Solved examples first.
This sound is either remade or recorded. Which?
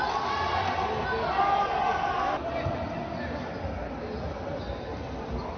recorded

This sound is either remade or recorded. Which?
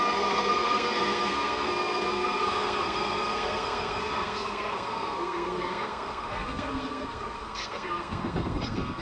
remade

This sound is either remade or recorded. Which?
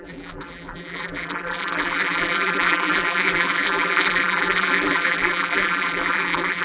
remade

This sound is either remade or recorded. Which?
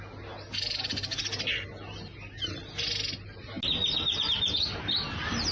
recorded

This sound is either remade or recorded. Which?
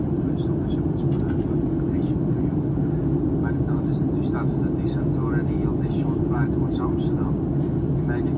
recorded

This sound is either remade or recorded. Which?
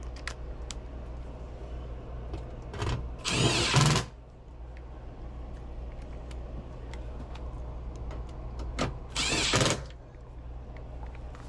recorded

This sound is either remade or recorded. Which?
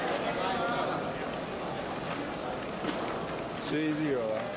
recorded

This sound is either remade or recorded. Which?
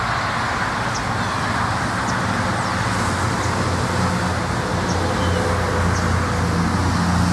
recorded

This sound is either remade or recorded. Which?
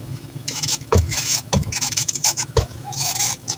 remade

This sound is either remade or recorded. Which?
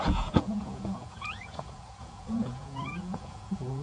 remade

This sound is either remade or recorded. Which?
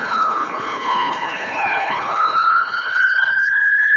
remade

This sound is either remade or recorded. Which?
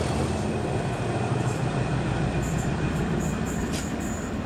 remade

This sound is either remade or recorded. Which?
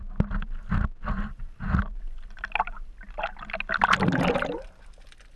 recorded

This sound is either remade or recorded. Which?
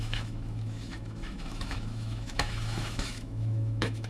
remade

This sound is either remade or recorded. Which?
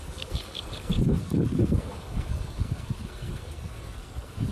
remade